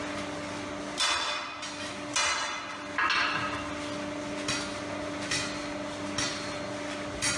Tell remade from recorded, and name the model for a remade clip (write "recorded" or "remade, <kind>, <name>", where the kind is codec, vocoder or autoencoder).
recorded